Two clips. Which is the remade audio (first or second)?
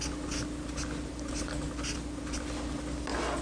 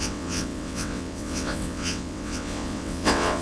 second